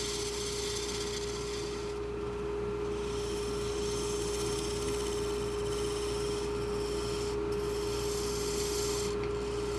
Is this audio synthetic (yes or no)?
no